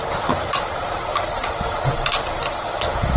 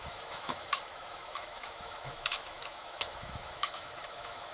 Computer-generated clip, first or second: second